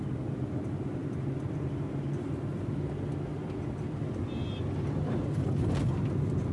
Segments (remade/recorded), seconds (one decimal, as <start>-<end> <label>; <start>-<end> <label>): 0.0-6.5 recorded